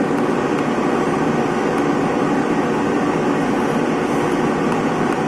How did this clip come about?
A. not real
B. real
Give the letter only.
B